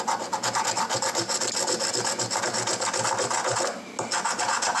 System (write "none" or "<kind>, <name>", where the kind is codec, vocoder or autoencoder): none